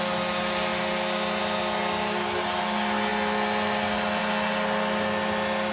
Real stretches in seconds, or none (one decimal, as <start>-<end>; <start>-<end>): 0.0-5.7